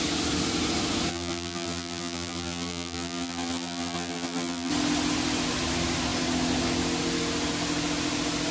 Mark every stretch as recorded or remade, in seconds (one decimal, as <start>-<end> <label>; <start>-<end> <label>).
0.0-1.1 recorded; 1.1-4.7 remade; 4.7-8.5 recorded